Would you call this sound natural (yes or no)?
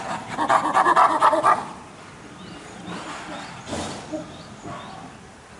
yes